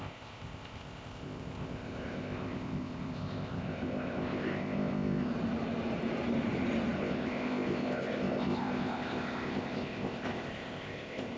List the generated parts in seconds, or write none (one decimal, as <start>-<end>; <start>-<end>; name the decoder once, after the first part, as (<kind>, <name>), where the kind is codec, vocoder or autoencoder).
0.0-5.3 (codec, ZipCodec); 7.0-11.4